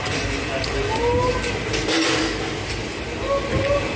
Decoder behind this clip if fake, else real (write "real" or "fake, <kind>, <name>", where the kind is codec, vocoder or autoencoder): real